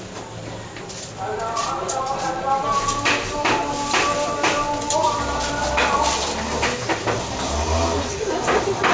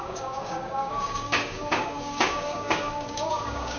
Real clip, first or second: first